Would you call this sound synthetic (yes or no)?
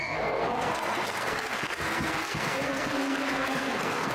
yes